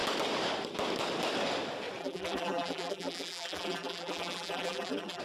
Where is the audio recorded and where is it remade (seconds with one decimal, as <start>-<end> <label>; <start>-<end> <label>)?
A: 0.0-2.0 recorded; 2.0-5.2 remade